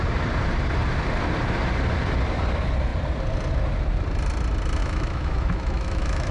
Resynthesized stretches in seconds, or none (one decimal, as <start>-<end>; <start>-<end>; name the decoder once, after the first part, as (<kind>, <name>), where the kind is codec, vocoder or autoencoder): 4.8-6.3 (autoencoder, DAC-VAE)